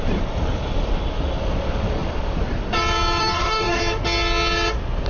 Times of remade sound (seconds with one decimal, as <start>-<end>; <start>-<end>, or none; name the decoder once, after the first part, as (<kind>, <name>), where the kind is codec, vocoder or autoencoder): 3.2-3.8 (codec, DAC)